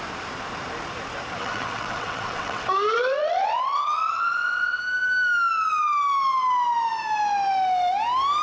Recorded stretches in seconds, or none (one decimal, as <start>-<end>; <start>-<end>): 0.0-1.4; 4.8-8.4